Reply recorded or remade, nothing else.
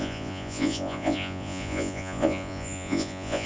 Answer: remade